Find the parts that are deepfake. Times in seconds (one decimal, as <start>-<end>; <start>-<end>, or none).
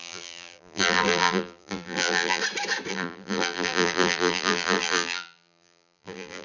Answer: 0.0-2.4; 2.9-6.4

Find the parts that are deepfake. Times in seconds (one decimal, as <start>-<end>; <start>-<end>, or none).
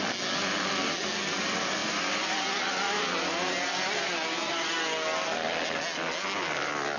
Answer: 1.8-4.5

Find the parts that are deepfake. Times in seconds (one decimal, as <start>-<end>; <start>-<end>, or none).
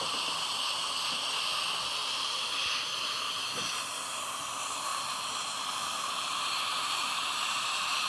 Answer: 2.0-2.5; 4.9-8.1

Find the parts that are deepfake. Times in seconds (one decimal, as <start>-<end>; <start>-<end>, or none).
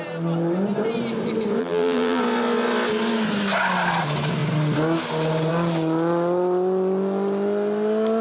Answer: 1.6-2.2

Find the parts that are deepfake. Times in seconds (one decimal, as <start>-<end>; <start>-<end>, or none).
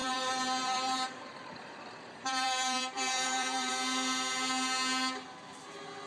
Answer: 0.0-3.7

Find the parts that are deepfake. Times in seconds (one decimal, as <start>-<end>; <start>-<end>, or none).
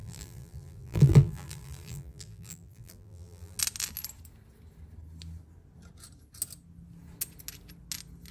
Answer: 0.0-3.6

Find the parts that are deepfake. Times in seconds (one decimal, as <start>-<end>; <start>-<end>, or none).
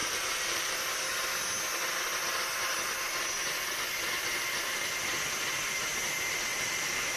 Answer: 0.0-0.8; 6.5-7.2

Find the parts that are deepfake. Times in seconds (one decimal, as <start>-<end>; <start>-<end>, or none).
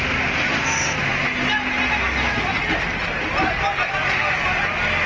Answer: none